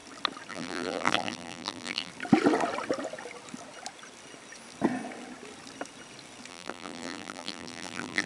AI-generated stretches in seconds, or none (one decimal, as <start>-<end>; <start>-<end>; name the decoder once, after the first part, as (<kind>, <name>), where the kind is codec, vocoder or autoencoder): 0.5-2.1 (vocoder, BigVGAN v2); 6.5-8.3